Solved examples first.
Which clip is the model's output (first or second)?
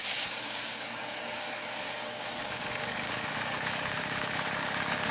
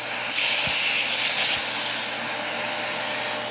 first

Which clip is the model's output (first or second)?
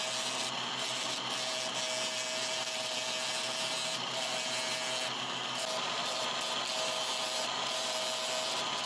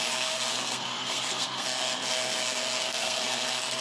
second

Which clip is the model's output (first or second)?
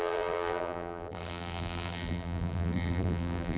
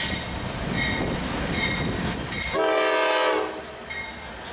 first